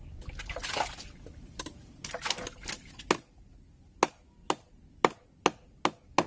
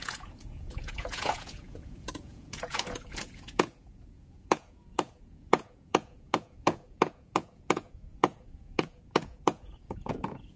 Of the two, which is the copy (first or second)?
second